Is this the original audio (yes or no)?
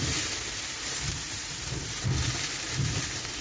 yes